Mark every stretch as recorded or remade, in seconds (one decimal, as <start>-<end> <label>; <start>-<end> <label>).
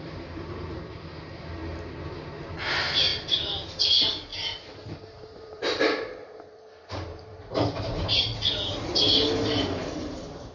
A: 0.0-1.6 remade; 1.6-2.7 recorded; 2.7-8.3 remade; 8.3-9.4 recorded; 9.4-10.5 remade